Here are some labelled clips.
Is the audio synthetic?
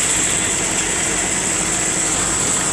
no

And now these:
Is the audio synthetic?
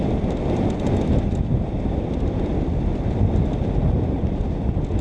no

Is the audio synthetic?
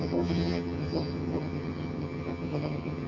yes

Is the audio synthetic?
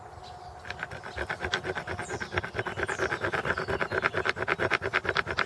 no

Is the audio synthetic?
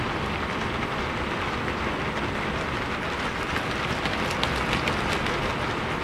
no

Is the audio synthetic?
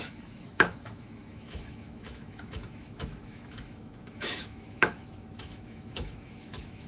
yes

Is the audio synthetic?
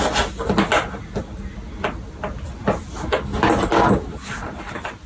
no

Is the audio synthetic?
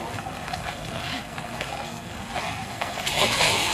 yes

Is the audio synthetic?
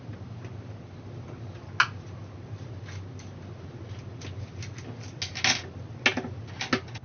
no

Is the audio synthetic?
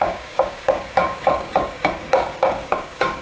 yes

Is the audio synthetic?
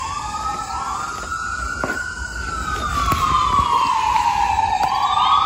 no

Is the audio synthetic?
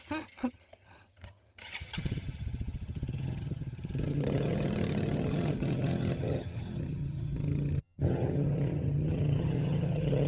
yes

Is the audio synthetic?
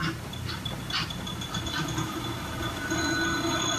no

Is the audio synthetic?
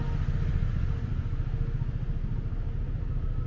no